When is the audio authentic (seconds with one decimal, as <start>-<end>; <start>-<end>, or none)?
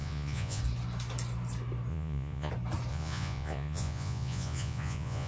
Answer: 0.6-1.9; 2.5-2.9